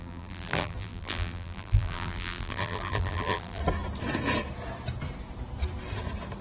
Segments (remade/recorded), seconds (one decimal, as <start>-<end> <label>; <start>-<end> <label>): 0.0-3.6 remade; 3.6-6.4 recorded